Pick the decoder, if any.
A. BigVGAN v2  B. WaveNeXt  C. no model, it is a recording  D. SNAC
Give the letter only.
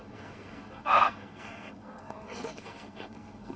D